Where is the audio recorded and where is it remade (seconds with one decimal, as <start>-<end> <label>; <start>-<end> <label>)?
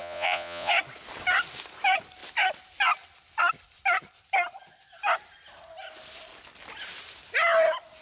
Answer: 0.0-0.7 remade; 0.7-8.0 recorded